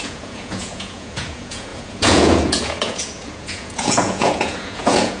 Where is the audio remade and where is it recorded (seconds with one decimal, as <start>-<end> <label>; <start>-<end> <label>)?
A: 0.0-5.2 remade